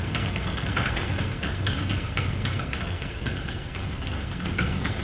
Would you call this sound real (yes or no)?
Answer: no